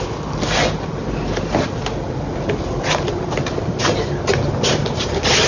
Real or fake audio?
real